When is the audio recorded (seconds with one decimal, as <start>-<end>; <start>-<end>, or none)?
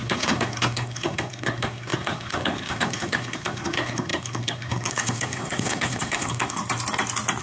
6.6-7.4